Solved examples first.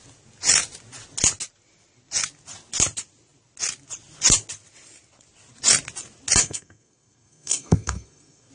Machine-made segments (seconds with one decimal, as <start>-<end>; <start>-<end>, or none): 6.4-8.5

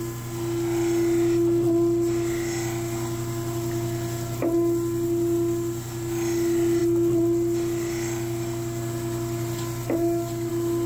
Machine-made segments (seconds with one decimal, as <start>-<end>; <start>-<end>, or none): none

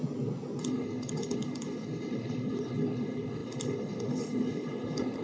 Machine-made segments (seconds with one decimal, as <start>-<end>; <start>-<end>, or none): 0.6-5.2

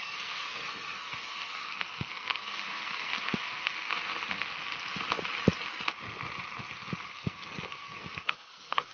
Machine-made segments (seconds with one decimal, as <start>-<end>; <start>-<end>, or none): 0.0-3.9; 7.1-8.9

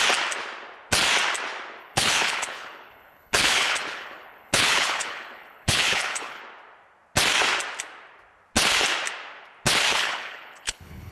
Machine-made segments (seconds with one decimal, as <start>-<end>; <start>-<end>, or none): 1.8-6.4; 9.9-11.1